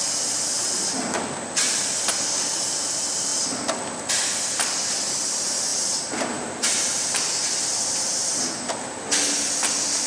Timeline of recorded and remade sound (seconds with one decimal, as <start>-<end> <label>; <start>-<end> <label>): 0.0-10.1 recorded